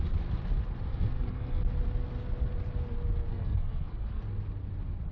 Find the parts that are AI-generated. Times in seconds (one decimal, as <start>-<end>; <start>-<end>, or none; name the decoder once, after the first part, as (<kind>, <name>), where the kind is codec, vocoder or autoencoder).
0.9-1.6 (codec, SNAC); 3.3-4.2